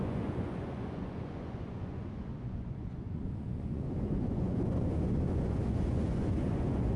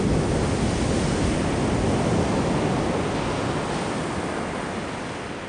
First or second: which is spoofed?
first